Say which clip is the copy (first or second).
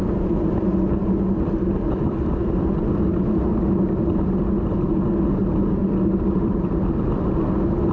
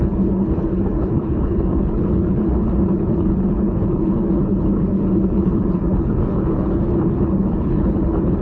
second